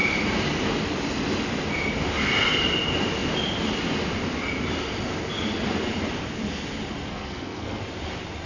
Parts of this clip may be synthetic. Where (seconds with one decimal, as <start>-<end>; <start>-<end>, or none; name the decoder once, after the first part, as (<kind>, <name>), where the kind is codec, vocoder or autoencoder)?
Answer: 7.1-7.8 (codec, SNAC)

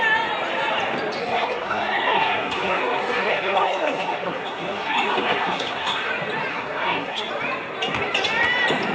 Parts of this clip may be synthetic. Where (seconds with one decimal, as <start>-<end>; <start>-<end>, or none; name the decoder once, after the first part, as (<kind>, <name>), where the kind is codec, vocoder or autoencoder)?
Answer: 1.2-6.1 (codec, SNAC); 6.5-7.3

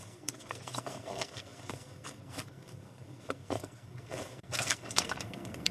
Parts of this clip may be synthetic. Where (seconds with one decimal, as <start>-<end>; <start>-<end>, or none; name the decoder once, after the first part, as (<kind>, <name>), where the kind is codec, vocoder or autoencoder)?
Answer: 0.0-5.7 (codec, SNAC)